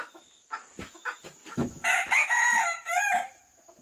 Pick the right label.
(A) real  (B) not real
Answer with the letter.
B